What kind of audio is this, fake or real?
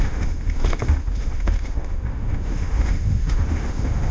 fake